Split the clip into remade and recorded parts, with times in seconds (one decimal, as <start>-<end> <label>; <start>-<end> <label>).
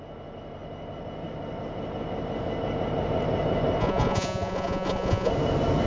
0.0-3.8 recorded; 3.8-5.3 remade; 5.3-5.9 recorded